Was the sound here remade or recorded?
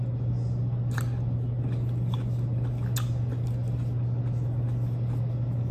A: recorded